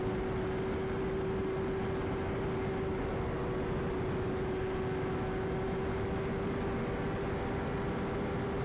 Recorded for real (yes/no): yes